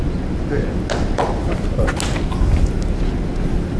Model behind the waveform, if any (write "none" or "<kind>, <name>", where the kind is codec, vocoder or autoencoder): none